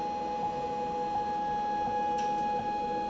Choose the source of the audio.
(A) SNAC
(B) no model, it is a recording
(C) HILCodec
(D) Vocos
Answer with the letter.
B